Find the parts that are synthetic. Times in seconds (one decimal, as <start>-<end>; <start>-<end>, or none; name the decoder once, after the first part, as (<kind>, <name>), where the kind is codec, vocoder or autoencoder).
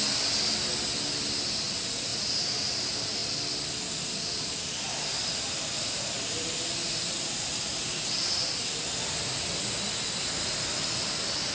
3.2-5.4 (vocoder, BigVGAN v2); 7.7-9.9